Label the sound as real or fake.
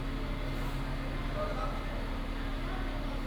real